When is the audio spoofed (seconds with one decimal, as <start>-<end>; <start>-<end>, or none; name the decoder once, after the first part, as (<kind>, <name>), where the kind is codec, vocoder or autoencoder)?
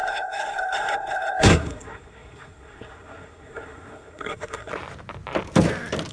0.0-4.7 (codec, SNAC)